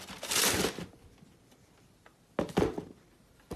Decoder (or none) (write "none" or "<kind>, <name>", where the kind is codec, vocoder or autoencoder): none